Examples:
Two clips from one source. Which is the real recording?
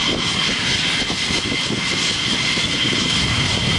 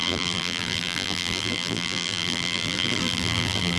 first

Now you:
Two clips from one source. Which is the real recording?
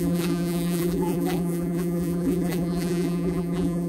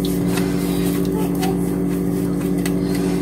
second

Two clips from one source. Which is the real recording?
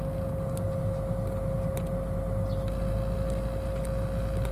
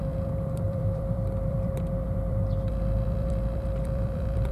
first